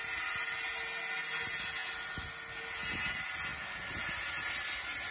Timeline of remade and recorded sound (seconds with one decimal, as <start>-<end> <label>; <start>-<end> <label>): 0.0-5.1 recorded